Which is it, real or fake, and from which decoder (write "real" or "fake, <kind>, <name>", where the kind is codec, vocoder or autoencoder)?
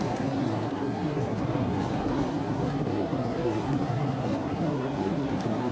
fake, codec, SNAC